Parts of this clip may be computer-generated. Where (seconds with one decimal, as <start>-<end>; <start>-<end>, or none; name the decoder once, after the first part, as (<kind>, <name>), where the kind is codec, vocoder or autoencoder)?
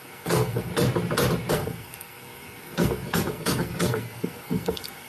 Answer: 0.0-0.7 (codec, SNAC); 1.5-5.1